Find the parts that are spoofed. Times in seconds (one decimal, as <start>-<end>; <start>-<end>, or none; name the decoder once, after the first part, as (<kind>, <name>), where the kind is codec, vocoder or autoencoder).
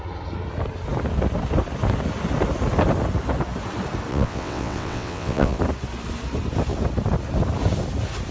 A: 4.1-5.6 (vocoder, WaveNeXt)